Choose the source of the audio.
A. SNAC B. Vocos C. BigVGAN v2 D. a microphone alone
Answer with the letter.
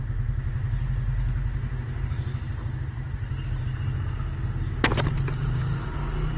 D